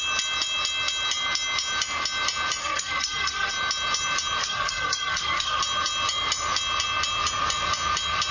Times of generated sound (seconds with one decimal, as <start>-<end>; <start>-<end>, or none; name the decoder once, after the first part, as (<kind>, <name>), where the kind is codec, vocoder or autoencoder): 2.6-3.5 (codec, SNAC); 4.4-5.6